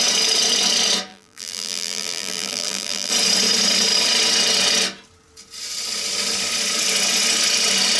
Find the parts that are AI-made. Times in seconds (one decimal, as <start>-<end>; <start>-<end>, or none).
1.1-3.1